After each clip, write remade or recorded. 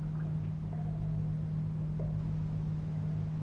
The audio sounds recorded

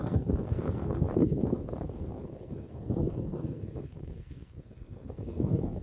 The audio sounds remade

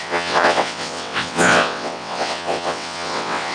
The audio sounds remade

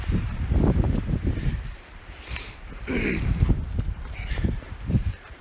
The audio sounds remade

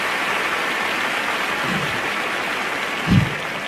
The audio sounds recorded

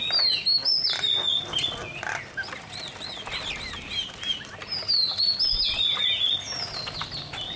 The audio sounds recorded